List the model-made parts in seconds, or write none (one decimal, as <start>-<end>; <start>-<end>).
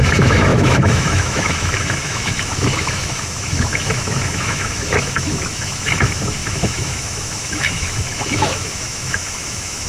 0.0-9.9